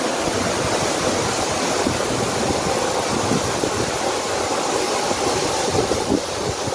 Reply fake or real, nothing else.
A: real